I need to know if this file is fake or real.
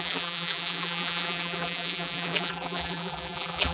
fake